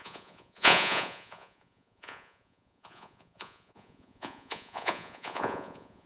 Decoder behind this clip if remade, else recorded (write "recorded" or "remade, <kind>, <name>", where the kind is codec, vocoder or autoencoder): remade, vocoder, Vocos